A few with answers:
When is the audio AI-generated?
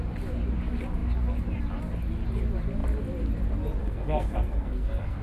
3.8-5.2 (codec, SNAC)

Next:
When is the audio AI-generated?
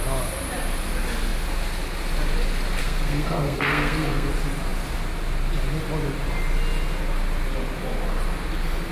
2.8-4.3 (codec, SNAC)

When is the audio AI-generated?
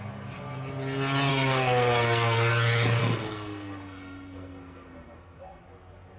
1.3-2.5 (codec, SNAC); 3.0-5.6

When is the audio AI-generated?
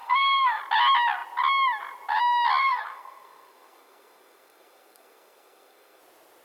0.0-0.6 (codec, SNAC); 2.6-6.0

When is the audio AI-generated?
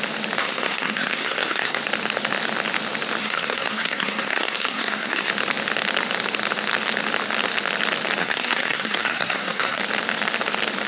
0.4-1.8 (codec, SNAC); 3.2-5.3; 8.2-9.8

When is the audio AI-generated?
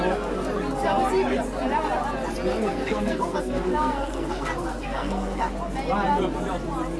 2.5-5.5 (codec, SNAC)